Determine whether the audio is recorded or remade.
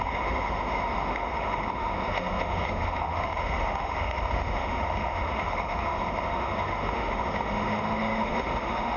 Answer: remade